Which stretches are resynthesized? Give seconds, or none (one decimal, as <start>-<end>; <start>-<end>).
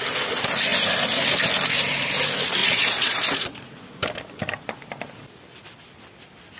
2.6-3.8